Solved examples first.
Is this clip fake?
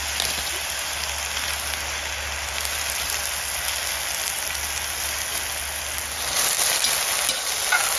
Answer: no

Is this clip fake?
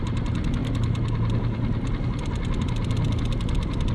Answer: no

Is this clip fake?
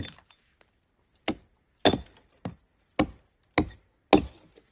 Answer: no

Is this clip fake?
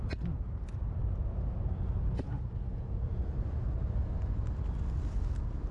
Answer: no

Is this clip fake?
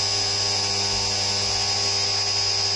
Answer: no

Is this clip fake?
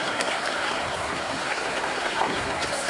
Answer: yes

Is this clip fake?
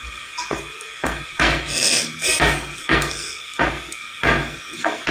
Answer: yes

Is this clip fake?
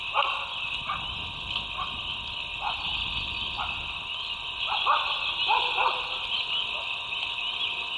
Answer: no